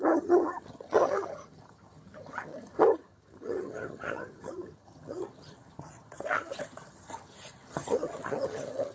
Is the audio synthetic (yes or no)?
yes